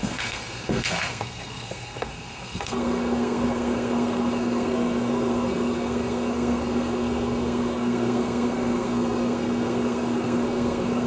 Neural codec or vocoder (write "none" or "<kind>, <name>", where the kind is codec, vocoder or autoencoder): codec, SNAC